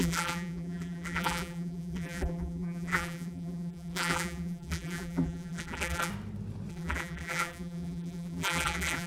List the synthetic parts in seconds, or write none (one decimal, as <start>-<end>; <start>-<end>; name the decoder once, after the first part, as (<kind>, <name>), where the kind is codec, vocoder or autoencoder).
0.0-6.1 (vocoder, BigVGAN v2); 6.7-9.1